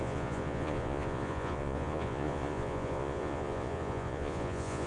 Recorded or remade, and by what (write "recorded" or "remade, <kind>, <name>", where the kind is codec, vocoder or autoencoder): remade, vocoder, Vocos